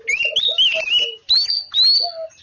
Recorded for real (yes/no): yes